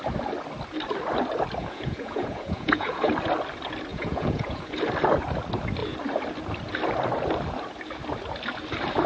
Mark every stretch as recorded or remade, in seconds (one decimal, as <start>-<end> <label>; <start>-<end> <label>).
0.0-1.6 recorded; 1.6-3.1 remade; 3.1-3.9 recorded; 3.9-4.8 remade; 4.8-9.1 recorded

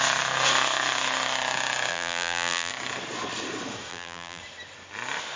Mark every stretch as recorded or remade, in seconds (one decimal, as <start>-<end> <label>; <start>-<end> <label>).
0.0-1.9 recorded; 1.9-2.7 remade; 2.7-3.9 recorded; 3.9-4.4 remade; 4.4-5.4 recorded